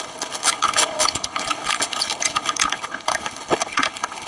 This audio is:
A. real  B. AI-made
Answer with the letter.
B